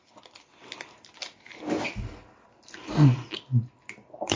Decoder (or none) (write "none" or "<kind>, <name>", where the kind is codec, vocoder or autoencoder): none